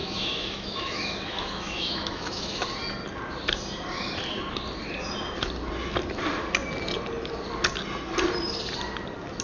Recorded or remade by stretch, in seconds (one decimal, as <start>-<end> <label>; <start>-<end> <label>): 0.0-2.7 remade; 2.7-9.4 recorded